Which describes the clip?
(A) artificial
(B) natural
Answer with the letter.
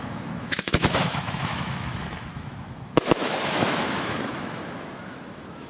A